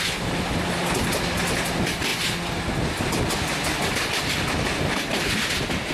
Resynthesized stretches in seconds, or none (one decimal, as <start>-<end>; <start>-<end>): none